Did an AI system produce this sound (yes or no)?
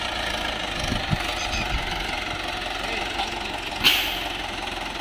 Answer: no